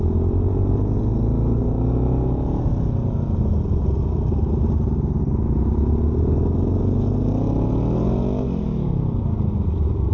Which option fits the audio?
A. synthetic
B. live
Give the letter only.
B